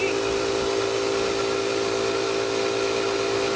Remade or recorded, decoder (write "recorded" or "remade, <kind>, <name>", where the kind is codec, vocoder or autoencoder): recorded